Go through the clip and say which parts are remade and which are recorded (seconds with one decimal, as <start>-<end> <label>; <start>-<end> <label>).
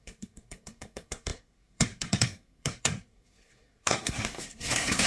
0.0-5.1 remade